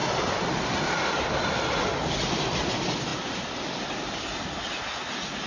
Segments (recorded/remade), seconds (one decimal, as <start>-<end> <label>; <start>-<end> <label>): 0.0-5.5 recorded